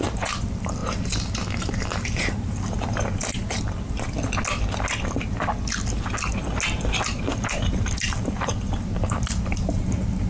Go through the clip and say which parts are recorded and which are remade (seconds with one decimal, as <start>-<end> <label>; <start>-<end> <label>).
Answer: 0.0-0.8 remade; 0.8-1.6 recorded; 1.6-3.4 remade; 3.4-7.3 recorded; 7.3-10.3 remade